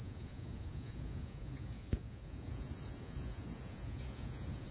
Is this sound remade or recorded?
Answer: remade